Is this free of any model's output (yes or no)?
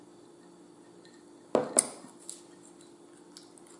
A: yes